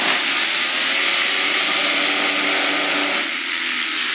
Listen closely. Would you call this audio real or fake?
real